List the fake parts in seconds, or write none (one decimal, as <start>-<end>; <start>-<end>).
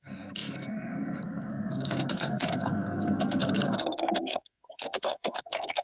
0.0-5.8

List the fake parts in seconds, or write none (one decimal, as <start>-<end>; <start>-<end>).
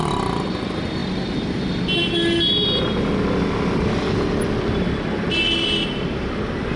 none